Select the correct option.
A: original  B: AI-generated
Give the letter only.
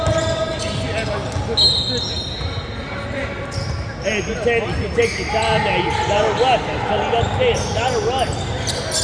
A